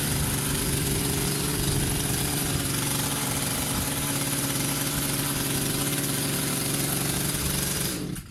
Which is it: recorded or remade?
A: recorded